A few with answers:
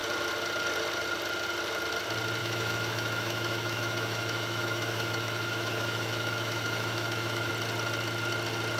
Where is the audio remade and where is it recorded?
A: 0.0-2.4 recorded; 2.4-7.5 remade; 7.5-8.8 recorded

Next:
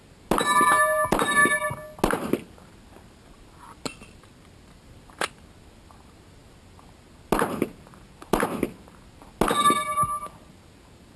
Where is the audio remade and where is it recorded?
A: 0.0-11.2 recorded

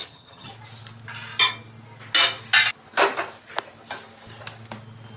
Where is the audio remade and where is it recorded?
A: 0.0-0.5 remade; 0.5-5.2 recorded